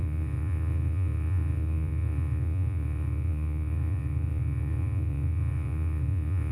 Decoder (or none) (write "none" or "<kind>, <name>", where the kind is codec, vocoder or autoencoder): vocoder, Vocos